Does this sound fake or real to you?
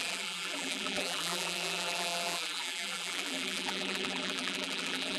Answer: fake